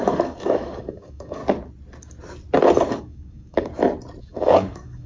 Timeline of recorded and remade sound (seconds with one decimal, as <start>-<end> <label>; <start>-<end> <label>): 0.0-1.4 remade; 1.4-2.9 recorded; 2.9-3.7 remade; 3.7-4.2 recorded; 4.2-5.1 remade